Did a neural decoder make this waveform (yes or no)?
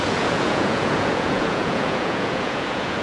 yes